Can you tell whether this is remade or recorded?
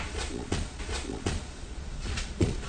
remade